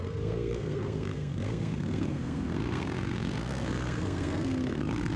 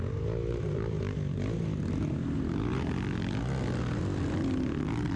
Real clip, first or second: second